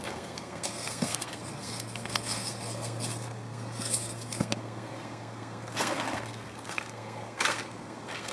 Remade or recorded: remade